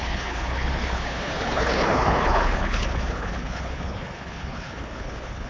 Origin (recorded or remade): remade